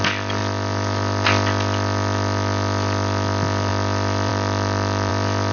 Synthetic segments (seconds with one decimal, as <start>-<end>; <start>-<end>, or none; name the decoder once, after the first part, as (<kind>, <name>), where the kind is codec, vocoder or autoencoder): none